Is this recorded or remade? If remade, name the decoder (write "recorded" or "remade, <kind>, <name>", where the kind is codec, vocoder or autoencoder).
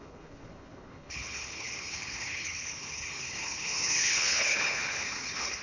remade, codec, HILCodec